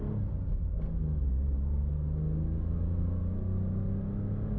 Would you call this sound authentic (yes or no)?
yes